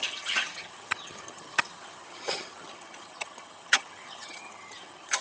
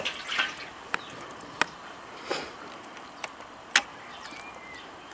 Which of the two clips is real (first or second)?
second